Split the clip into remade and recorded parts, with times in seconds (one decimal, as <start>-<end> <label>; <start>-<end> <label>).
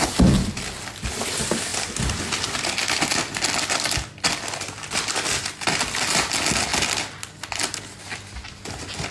0.0-9.1 recorded